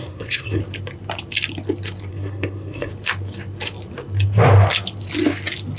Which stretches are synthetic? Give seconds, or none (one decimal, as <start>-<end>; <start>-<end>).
0.0-0.6; 2.1-2.9